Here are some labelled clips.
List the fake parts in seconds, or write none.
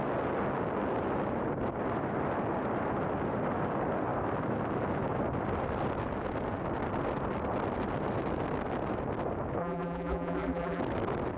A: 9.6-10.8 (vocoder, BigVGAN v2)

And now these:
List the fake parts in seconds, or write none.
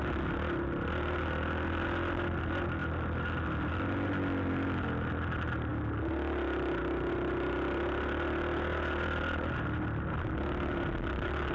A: none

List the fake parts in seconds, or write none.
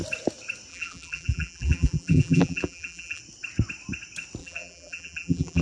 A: 0.7-3.2 (vocoder, BigVGAN v2); 4.4-5.6